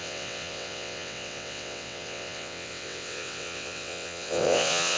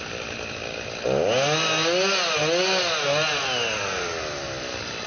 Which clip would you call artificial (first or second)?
first